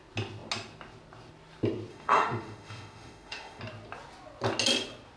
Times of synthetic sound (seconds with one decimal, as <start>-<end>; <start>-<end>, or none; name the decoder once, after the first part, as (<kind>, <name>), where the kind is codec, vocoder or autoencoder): 1.9-3.6 (autoencoder, DAC-VAE)